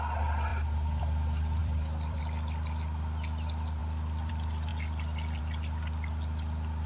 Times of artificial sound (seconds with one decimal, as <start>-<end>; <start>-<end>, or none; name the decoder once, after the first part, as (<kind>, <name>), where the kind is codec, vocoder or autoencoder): 1.6-2.2 (vocoder, BigVGAN v2)

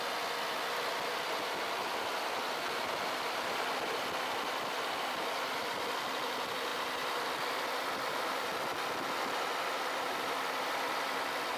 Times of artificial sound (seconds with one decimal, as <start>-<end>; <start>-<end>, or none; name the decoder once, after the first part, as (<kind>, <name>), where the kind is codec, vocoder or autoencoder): 6.7-8.9 (vocoder, BigVGAN v2)

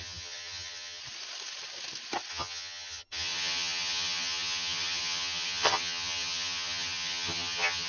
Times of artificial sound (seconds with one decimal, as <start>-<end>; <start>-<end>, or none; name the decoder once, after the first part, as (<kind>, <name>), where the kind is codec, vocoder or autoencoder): 0.0-1.0 (vocoder, HiFi-GAN); 2.3-7.9

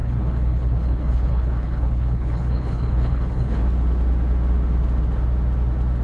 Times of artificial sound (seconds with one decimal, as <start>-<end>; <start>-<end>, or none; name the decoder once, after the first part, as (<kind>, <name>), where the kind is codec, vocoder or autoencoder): 0.0-3.6 (codec, HILCodec)

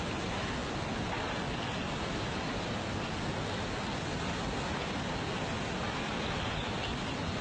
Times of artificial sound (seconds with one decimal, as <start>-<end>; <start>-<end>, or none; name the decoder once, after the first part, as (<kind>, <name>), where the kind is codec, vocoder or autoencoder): none

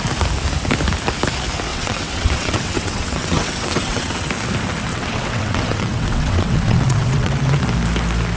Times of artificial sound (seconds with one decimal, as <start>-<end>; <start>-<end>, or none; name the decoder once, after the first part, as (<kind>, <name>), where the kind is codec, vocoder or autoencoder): 1.7-4.3 (vocoder, WaveNeXt); 4.9-7.6

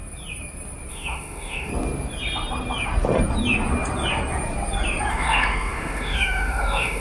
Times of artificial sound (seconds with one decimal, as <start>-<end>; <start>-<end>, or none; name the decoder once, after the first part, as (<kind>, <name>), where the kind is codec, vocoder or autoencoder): 0.9-1.7 (autoencoder, DAC-VAE); 5.1-7.0

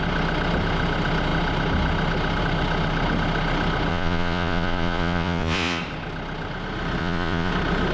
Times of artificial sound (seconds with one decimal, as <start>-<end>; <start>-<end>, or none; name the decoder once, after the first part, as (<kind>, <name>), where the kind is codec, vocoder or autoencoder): 3.9-5.8 (vocoder, Vocos); 7.0-7.5